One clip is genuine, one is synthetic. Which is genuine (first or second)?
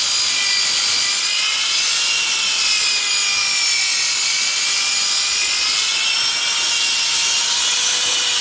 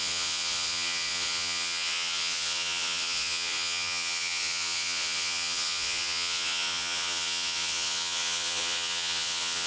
first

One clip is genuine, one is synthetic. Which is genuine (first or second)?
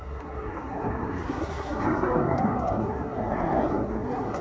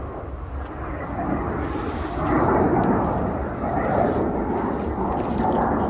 second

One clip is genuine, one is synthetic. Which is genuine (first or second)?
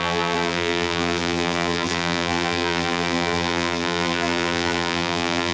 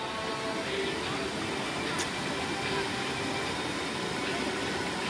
second